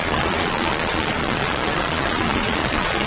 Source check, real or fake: fake